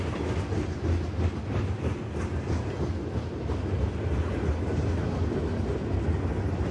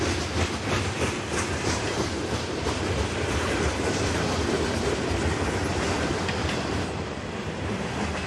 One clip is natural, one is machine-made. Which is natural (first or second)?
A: first